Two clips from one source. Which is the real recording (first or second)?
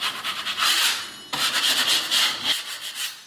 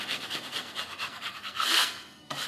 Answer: first